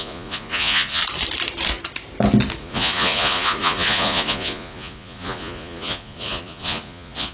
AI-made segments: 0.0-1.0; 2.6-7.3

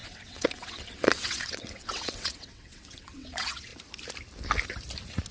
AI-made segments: 0.0-3.7